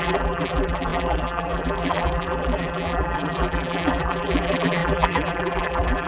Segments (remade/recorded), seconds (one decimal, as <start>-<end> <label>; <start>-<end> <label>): 0.0-6.1 remade